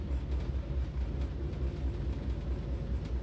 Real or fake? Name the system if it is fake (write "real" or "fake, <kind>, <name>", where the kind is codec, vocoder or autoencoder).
real